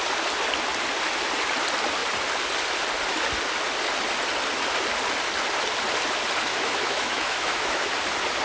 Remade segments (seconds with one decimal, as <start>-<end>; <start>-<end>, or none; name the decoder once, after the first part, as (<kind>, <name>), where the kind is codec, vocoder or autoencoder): 6.5-7.9 (autoencoder, DAC-VAE)